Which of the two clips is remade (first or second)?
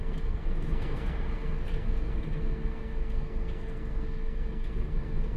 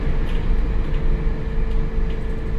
first